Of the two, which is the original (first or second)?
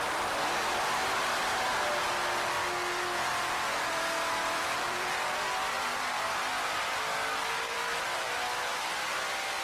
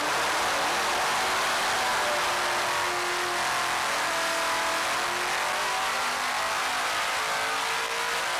second